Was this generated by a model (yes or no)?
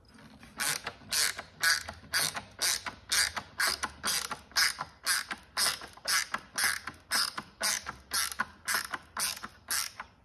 no